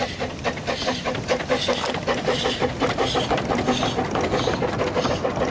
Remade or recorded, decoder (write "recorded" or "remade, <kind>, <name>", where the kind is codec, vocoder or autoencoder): recorded